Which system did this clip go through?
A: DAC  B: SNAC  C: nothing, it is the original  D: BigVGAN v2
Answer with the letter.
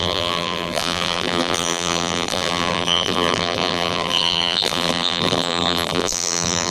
D